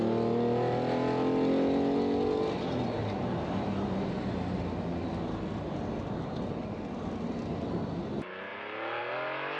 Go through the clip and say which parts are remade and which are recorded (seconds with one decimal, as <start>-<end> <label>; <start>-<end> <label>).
0.0-9.6 recorded